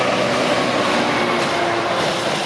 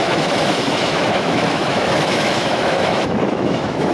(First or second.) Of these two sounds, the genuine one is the first